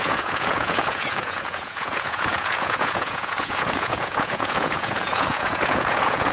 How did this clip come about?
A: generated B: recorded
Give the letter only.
A